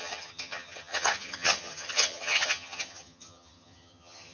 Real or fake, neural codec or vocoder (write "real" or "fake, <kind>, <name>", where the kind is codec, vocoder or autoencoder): fake, vocoder, HiFi-GAN